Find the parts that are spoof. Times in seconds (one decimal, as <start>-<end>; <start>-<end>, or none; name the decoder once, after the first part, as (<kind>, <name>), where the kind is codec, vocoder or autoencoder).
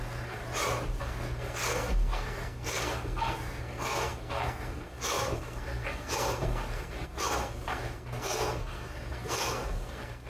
0.0-0.4 (codec, SNAC); 1.0-10.3